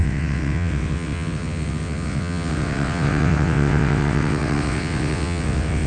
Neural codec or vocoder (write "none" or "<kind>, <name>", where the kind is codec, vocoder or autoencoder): vocoder, WaveNeXt